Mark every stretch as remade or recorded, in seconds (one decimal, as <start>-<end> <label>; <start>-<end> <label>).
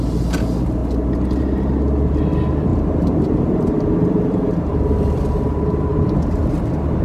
0.0-2.7 recorded; 2.7-4.7 remade; 4.7-7.0 recorded